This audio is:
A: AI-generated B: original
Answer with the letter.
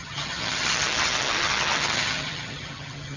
A